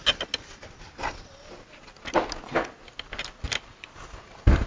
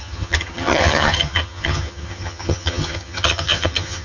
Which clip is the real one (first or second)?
first